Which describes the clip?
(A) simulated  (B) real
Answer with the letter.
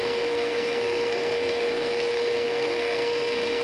A